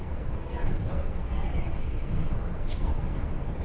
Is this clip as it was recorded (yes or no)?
no